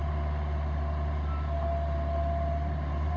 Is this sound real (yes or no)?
yes